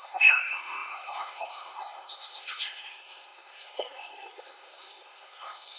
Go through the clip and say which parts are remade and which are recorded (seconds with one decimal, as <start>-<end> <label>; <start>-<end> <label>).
0.0-5.8 remade